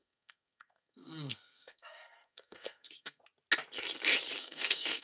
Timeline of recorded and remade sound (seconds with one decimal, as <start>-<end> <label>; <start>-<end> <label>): 0.0-3.2 remade; 3.2-4.4 recorded; 4.4-5.0 remade